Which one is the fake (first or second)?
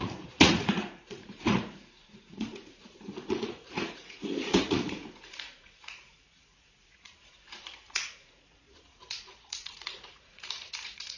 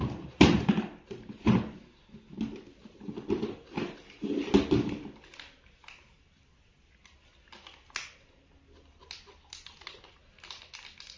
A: first